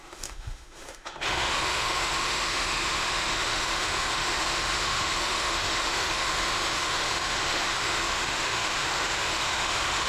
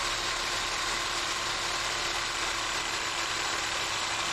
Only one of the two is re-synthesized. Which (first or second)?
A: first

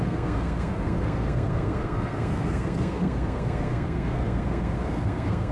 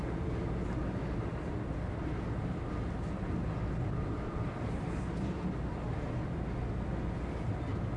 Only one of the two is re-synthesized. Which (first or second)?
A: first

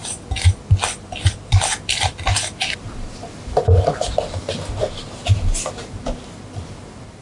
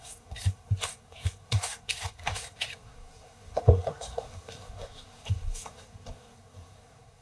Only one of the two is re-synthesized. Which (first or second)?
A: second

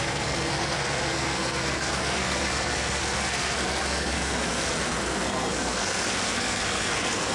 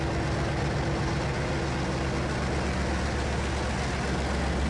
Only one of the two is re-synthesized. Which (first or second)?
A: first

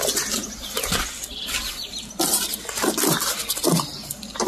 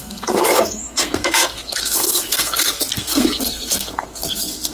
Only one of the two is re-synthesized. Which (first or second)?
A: second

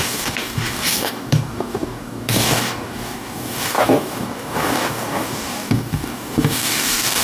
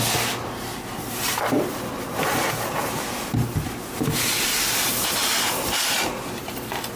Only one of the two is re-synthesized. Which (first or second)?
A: first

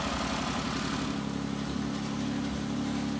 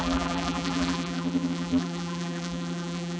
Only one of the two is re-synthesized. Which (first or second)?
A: second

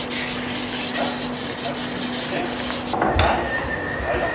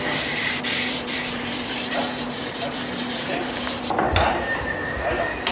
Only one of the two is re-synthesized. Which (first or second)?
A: second